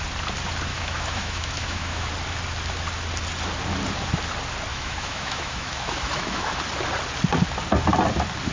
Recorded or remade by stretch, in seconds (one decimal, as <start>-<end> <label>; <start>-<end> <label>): 0.0-0.7 recorded; 0.7-2.1 remade; 2.1-4.7 recorded; 4.7-6.6 remade; 6.6-8.5 recorded